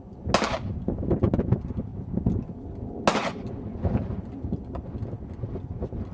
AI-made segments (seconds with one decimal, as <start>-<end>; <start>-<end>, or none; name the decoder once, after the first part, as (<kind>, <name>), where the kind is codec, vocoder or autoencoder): none